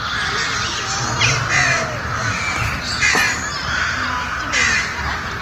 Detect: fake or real real